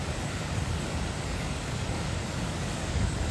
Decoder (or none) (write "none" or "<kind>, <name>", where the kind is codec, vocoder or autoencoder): codec, DAC